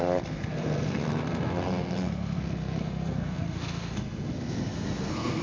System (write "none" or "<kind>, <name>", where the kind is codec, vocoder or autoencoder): codec, SNAC